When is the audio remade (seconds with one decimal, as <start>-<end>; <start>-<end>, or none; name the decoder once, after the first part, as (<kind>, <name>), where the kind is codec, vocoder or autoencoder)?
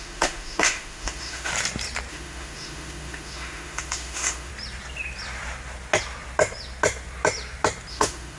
0.0-1.5 (autoencoder, DAC-VAE); 2.1-4.5; 7.9-8.4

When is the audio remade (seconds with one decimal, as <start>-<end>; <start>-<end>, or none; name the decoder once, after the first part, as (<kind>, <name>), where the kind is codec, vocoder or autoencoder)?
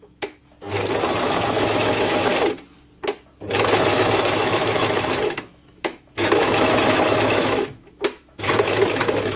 0.0-0.4 (autoencoder, DAC-VAE); 1.2-2.3; 3.5-9.4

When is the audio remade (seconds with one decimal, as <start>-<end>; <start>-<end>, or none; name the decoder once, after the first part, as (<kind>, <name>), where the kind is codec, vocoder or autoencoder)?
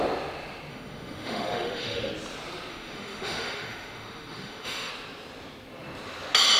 0.7-2.1 (autoencoder, DAC-VAE); 2.7-4.9